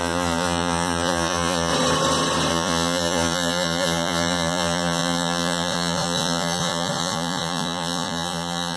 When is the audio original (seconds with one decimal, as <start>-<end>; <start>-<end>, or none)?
1.7-2.5